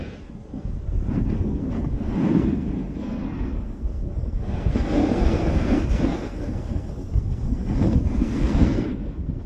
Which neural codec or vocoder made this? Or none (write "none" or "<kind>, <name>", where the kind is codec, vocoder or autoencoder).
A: codec, SNAC